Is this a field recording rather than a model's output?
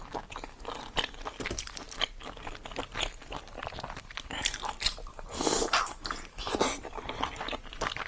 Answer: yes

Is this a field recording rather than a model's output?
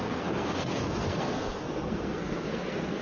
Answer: no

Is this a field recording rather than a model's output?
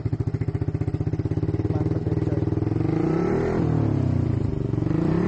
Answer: yes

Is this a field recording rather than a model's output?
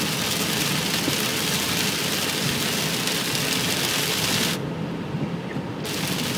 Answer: yes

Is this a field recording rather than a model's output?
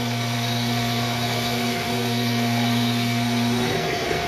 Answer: no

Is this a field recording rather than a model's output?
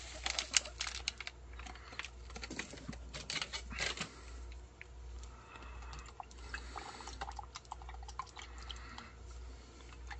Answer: yes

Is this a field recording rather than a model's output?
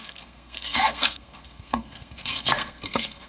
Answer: no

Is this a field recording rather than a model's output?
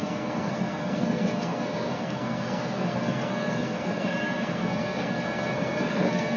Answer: no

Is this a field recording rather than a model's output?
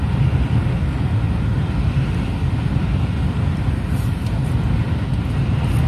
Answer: yes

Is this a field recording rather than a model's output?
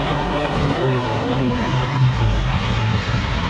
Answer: no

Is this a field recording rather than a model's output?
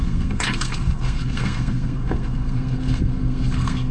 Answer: no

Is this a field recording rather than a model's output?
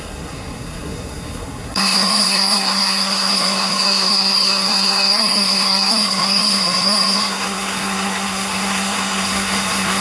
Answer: no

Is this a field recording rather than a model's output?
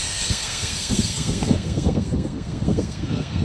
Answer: no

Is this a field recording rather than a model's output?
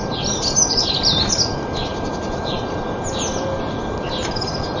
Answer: yes